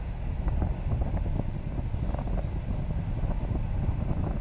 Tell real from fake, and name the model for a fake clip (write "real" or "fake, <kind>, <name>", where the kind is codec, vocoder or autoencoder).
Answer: real